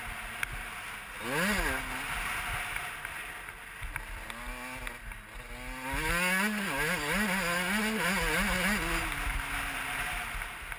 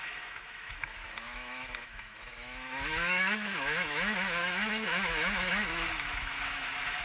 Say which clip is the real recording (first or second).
first